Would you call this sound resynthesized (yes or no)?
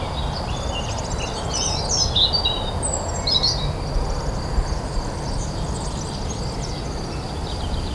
no